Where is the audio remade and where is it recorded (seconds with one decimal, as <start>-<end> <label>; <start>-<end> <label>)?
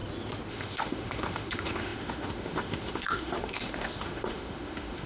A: 0.0-0.5 recorded; 0.5-5.1 remade